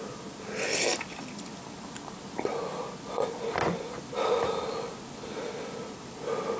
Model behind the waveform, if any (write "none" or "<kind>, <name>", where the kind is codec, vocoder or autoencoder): none